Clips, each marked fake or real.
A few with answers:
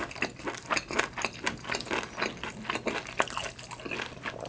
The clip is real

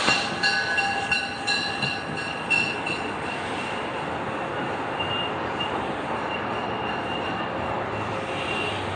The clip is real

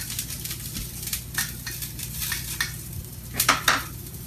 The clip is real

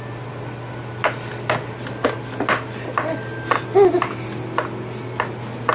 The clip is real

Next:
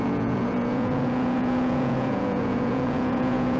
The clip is fake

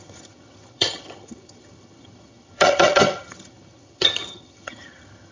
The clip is fake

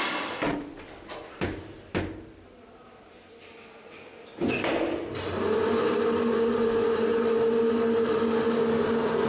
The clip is real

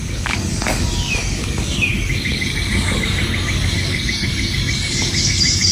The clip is fake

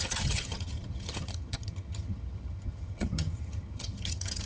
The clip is fake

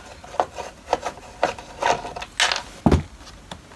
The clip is real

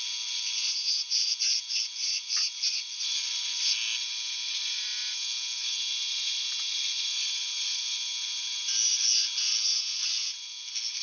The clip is real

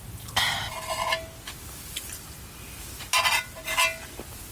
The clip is real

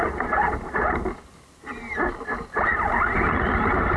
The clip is real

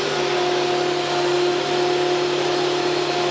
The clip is real